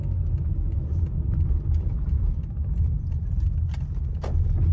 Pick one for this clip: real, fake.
real